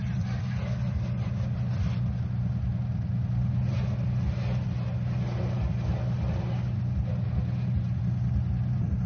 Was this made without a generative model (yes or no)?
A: yes